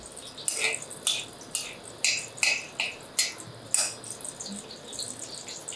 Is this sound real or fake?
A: real